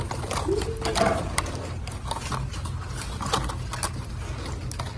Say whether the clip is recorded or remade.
recorded